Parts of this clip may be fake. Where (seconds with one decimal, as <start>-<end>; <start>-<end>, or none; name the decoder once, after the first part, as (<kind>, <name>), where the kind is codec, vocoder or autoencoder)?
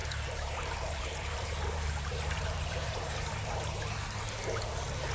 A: 0.0-3.1 (vocoder, BigVGAN v2)